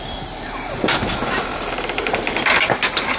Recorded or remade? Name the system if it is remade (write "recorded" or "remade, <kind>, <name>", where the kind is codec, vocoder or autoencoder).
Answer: recorded